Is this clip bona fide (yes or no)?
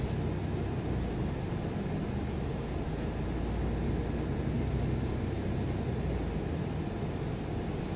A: yes